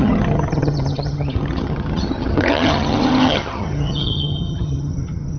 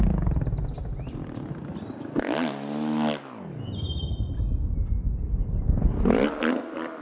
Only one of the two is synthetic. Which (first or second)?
first